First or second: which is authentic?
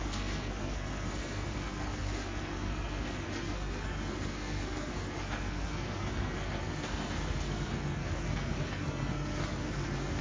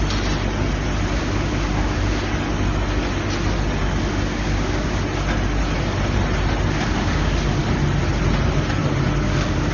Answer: second